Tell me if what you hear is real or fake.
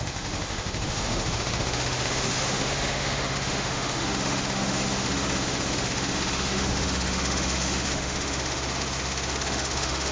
fake